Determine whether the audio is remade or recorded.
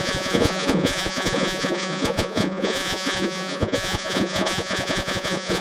remade